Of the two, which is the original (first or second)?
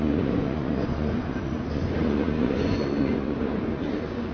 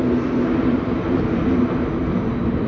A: second